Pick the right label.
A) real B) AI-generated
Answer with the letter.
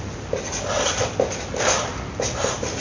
A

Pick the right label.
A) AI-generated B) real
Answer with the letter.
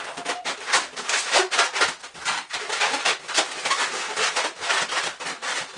B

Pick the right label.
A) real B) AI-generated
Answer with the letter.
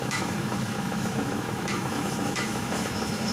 B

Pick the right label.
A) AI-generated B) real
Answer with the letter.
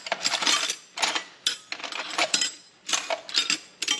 B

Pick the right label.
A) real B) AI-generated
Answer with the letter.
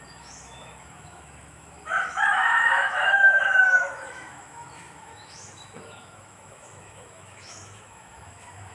B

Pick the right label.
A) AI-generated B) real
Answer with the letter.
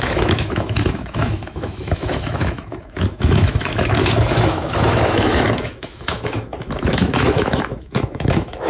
A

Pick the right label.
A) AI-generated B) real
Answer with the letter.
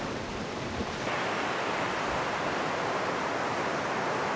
B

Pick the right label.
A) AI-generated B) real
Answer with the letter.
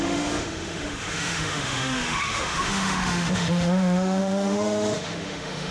A